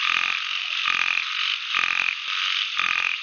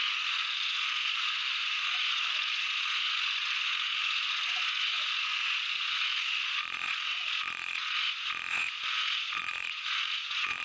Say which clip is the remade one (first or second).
second